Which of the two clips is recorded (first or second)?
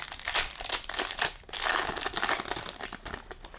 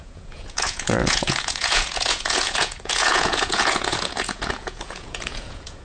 first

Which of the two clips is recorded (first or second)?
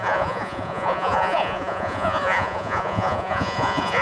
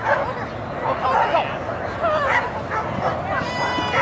second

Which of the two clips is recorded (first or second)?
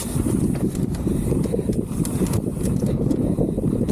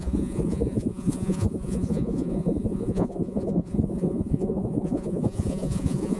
first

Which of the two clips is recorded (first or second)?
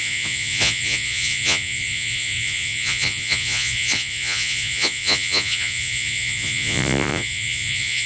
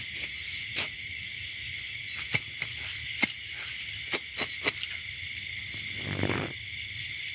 second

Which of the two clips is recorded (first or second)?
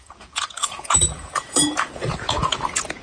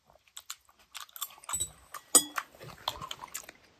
second